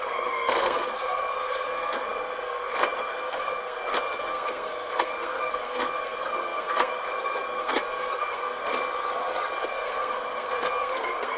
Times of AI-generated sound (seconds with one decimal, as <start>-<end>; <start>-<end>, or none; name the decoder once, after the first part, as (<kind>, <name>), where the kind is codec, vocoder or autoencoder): 0.0-8.7 (codec, SNAC); 9.6-11.4